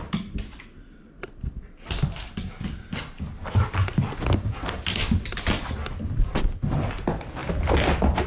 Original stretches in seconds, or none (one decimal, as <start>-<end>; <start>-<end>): 0.0-8.3